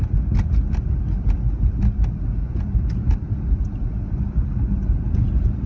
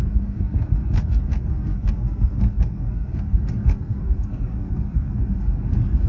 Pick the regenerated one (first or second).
second